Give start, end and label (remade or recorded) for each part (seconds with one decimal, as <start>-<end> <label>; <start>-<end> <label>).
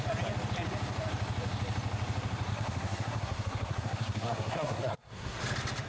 0.0-2.5 recorded; 2.5-5.4 remade; 5.4-5.9 recorded